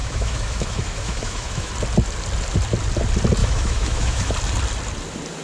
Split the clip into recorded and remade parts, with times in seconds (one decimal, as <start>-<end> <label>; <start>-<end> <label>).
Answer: 0.0-1.7 remade; 1.7-3.4 recorded; 3.4-4.3 remade; 4.3-5.4 recorded